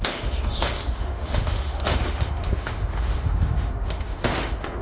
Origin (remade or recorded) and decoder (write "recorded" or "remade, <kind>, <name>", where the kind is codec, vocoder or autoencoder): remade, autoencoder, DAC-VAE